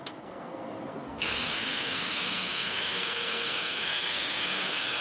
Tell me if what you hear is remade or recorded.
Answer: remade